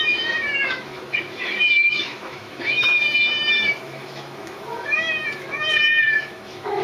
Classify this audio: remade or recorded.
remade